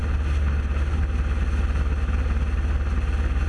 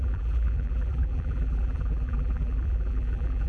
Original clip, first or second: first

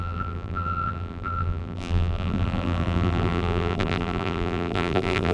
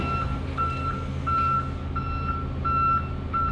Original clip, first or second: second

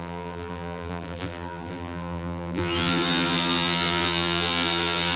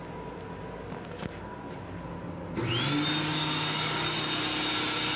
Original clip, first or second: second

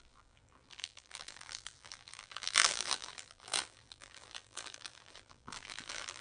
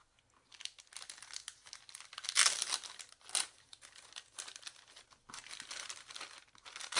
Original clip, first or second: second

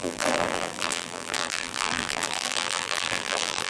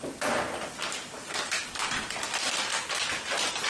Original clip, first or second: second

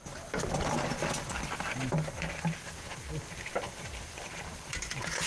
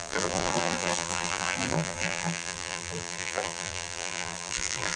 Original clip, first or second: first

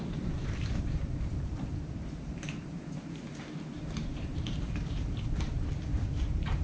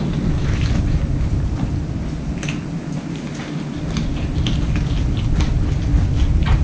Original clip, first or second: second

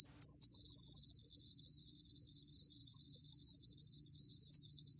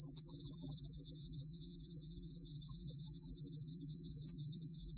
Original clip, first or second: first